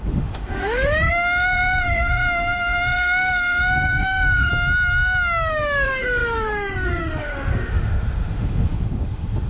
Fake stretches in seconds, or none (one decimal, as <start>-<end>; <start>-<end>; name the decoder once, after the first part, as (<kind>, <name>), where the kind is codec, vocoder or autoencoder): 0.0-4.5 (autoencoder, DAC-VAE); 5.5-9.5